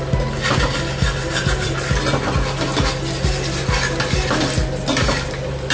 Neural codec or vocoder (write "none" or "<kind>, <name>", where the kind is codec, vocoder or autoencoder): none